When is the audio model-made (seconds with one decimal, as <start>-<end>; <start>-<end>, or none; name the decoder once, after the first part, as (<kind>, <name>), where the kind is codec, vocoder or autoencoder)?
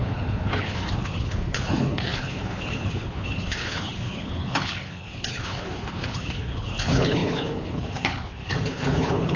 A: 0.0-9.4 (codec, HILCodec)